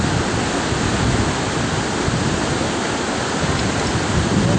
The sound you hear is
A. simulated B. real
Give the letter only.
B